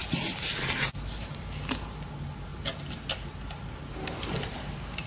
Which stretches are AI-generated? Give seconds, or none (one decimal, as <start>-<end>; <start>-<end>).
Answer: none